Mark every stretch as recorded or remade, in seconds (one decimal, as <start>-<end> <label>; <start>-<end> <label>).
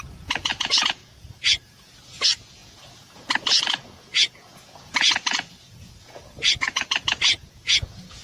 0.0-8.2 remade